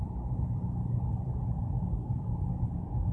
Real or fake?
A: real